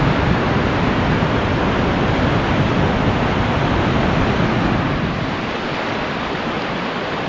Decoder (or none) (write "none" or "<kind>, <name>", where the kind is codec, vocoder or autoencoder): none